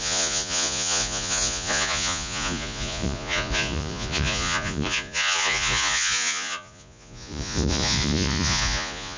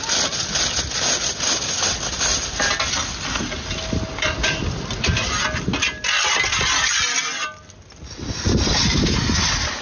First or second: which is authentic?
second